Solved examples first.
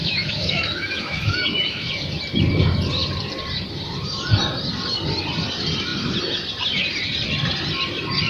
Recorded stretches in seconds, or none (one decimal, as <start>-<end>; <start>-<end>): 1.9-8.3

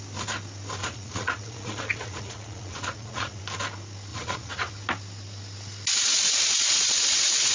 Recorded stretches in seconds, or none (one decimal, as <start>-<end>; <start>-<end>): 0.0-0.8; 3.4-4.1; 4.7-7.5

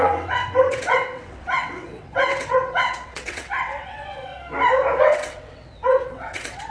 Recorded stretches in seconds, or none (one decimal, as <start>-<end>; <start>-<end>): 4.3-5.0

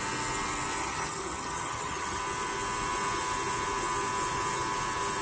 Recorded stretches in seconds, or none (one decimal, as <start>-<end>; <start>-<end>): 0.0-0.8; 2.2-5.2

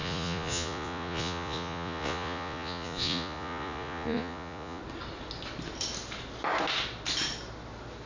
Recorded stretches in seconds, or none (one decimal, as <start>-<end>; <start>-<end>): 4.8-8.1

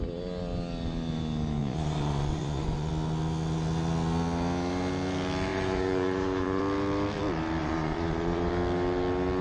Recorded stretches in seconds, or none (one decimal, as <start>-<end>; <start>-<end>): 0.0-1.6; 2.9-5.5; 6.6-7.6; 8.5-9.4

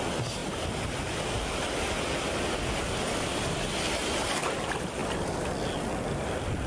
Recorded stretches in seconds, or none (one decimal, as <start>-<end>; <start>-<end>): 0.0-6.7

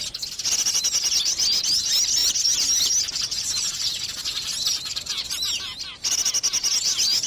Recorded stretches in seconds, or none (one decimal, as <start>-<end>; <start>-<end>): 0.0-2.2; 2.9-7.3